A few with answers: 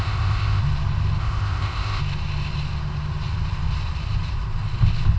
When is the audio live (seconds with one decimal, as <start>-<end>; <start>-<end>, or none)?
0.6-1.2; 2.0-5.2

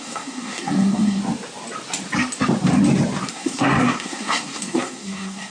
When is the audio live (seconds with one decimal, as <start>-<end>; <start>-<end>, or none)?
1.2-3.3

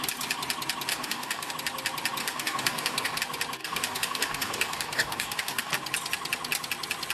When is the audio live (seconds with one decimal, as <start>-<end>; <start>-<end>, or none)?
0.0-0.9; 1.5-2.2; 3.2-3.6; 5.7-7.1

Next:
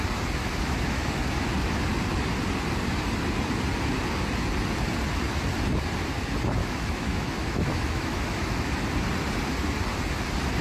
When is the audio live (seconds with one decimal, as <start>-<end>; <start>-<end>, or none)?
0.0-0.4; 1.2-6.6; 8.7-10.6